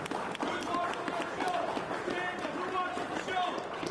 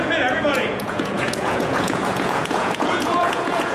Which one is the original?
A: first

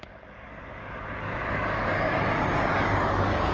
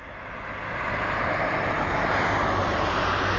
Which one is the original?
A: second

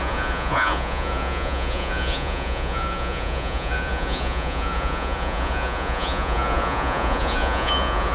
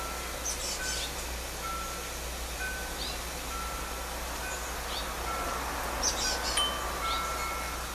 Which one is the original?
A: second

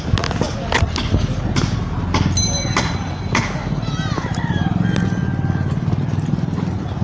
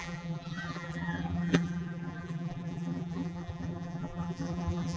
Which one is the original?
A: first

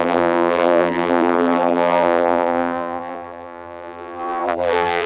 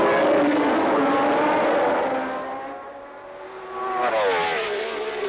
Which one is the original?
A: second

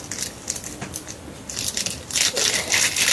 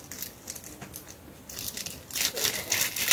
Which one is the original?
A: second